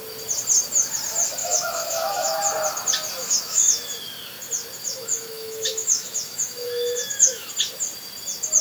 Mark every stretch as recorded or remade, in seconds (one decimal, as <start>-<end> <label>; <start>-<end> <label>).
0.0-1.4 recorded; 1.4-2.4 remade; 2.4-3.2 recorded; 3.2-4.1 remade; 4.1-4.8 recorded; 4.8-7.5 remade; 7.5-8.6 recorded